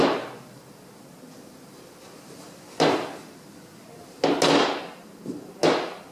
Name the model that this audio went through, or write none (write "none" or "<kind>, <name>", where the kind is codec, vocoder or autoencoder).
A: none